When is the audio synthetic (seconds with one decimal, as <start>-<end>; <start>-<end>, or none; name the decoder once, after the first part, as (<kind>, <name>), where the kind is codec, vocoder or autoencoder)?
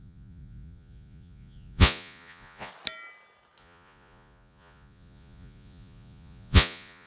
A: 0.0-2.7 (vocoder, Vocos); 3.6-7.1